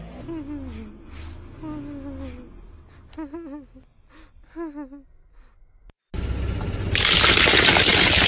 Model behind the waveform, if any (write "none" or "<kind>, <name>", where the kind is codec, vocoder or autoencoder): none